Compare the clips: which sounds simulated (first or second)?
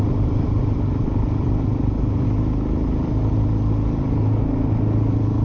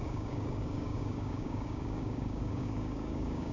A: second